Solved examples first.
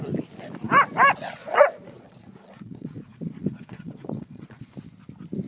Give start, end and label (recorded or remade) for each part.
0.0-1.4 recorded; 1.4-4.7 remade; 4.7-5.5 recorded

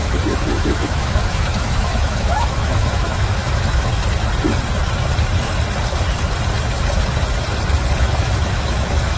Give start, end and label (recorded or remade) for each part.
0.0-3.9 remade; 3.9-8.0 recorded; 8.0-9.2 remade

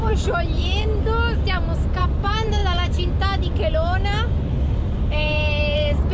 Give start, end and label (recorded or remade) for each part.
0.0-0.7 remade; 0.7-2.0 recorded; 2.0-2.6 remade; 2.6-4.8 recorded; 4.8-6.1 remade

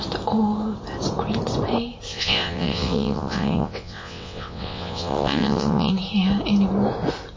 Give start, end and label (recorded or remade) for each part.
0.0-2.1 recorded; 2.1-5.9 remade; 5.9-7.4 recorded

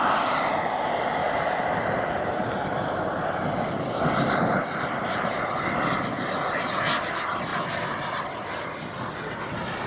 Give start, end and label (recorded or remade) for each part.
0.0-9.9 recorded

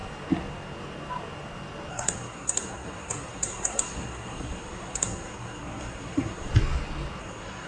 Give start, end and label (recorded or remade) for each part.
0.0-1.9 recorded; 1.9-6.5 remade; 6.5-7.2 recorded; 7.2-7.7 remade